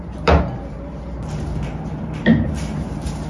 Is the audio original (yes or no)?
no